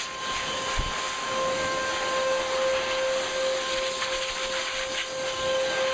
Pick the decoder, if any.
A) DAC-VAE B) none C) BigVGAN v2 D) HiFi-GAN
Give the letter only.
B